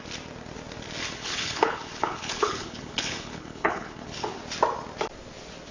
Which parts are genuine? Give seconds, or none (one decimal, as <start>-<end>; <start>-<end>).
0.0-1.0; 4.4-5.7